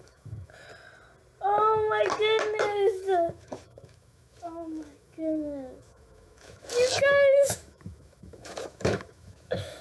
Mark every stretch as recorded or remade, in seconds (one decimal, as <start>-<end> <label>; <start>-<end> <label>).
0.0-0.7 remade; 0.7-2.6 recorded; 2.6-9.8 remade